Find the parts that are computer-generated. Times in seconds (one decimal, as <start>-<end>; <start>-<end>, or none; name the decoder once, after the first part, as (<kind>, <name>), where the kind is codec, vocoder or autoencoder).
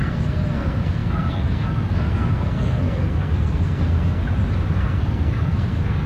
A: 0.0-4.2 (codec, SNAC); 4.8-6.1